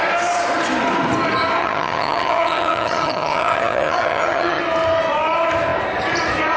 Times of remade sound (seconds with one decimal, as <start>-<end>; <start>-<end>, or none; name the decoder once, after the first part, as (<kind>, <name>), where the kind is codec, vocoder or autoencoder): 1.6-4.6 (vocoder, HiFi-GAN)

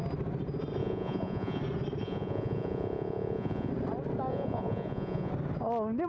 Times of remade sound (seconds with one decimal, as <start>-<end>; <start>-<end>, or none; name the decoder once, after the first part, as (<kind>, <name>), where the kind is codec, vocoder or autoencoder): 0.8-1.6 (vocoder, Vocos); 2.0-3.7; 4.3-5.3

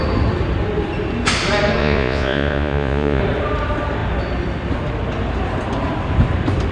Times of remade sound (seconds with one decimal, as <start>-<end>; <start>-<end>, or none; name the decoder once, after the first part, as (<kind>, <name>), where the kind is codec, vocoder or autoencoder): 1.8-3.2 (vocoder, Vocos)

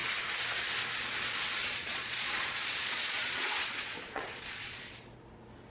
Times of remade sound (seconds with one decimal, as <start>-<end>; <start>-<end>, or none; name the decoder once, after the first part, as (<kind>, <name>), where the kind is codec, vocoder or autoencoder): 1.6-4.9 (vocoder, Vocos)